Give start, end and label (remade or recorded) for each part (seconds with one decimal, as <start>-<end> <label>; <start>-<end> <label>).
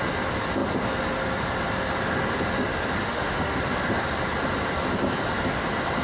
0.0-3.0 recorded; 3.0-3.6 remade; 3.6-6.0 recorded